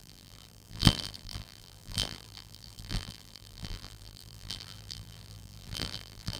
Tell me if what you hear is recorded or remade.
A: remade